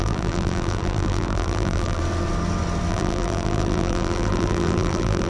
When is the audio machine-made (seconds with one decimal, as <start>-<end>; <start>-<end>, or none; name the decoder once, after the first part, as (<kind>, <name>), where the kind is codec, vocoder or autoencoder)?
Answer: 0.0-2.0 (vocoder, BigVGAN v2); 2.9-5.3